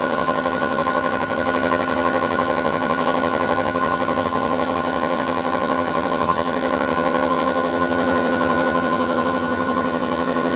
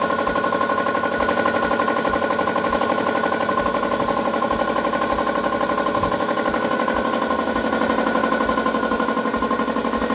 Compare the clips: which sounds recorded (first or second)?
second